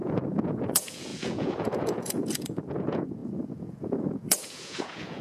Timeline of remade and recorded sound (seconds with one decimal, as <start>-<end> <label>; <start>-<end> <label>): 0.0-5.2 remade